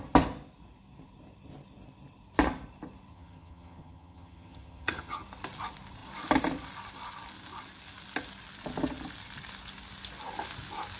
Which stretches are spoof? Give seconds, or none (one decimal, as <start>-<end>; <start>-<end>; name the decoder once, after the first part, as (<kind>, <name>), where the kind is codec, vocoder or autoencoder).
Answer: 3.1-5.2 (vocoder, HiFi-GAN)